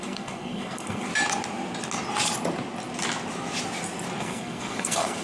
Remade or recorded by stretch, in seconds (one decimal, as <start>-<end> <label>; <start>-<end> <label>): 0.0-1.1 remade; 1.1-4.2 recorded; 4.2-5.2 remade